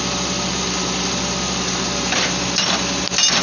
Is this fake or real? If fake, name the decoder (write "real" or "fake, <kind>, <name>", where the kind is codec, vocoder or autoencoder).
real